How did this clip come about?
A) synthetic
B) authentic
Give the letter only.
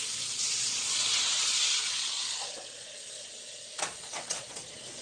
A